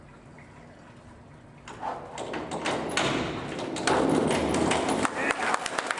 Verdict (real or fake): real